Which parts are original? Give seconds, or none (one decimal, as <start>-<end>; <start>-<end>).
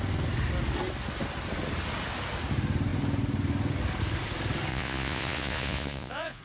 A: 0.0-4.7